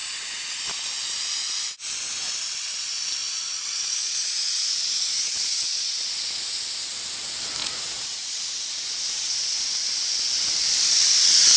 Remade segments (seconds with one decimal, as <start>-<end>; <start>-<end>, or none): 0.0-0.5; 3.2-6.6; 7.6-9.7

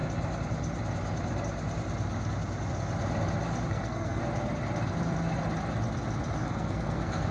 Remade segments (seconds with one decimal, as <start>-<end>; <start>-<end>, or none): 3.7-4.2; 6.4-7.3